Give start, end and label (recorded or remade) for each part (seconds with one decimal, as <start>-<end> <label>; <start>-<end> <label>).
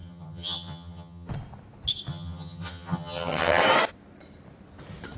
0.0-1.3 remade; 1.3-2.1 recorded; 2.1-3.6 remade; 3.6-5.2 recorded